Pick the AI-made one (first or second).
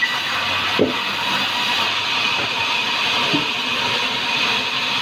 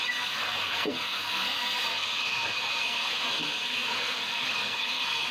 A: second